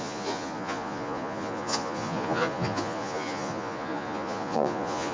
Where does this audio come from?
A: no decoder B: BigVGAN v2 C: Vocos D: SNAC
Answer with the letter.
C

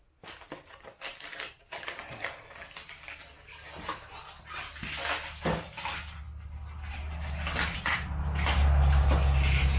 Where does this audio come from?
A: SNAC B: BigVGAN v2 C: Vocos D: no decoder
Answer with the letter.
D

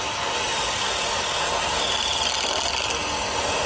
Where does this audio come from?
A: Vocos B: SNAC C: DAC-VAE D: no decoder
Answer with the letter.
D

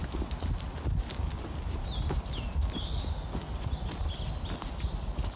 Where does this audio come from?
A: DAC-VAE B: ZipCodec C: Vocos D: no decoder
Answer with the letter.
D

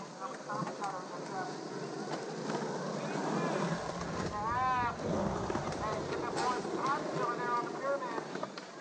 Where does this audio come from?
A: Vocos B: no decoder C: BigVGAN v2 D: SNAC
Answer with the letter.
B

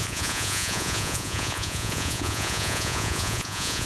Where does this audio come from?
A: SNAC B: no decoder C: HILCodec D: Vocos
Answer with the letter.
D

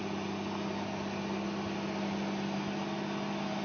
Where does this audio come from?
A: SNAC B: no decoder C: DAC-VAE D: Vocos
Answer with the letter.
B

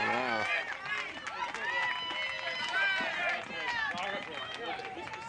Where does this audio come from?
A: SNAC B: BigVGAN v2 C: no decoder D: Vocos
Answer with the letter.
C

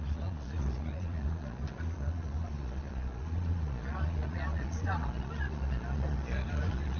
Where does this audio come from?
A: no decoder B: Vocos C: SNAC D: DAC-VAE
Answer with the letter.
B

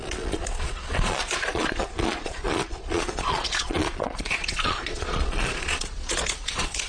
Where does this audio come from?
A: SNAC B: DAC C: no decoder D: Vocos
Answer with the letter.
D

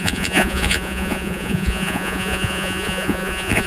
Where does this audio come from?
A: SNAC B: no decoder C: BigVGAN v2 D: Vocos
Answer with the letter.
D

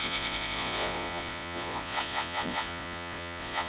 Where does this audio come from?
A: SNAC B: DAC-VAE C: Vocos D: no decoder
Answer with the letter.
C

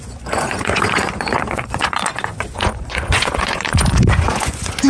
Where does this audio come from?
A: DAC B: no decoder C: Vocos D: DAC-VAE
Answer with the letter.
C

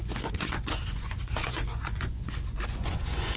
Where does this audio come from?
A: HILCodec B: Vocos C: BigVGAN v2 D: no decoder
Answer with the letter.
B